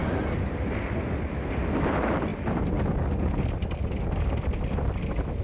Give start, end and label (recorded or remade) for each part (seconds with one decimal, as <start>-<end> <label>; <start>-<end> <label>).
0.0-5.4 recorded